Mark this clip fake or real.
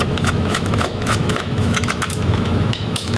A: fake